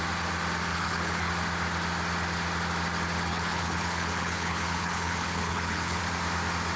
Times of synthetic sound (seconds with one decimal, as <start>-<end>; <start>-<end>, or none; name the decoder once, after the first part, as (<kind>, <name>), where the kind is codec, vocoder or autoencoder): 0.7-1.3 (codec, HILCodec); 3.3-6.0

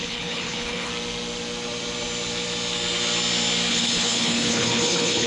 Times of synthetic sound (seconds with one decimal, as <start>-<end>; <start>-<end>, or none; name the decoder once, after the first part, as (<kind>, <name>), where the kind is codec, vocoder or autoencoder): 0.0-0.9 (codec, HILCodec); 3.7-5.3

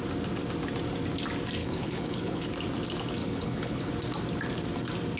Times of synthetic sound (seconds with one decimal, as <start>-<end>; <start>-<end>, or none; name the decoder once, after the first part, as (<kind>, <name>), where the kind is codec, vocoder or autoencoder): 1.6-2.4 (codec, HILCodec); 3.2-3.9

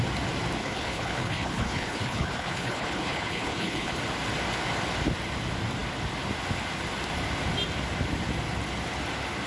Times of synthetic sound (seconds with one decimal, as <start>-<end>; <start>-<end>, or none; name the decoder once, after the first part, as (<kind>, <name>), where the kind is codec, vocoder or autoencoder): 0.6-4.0 (codec, HILCodec)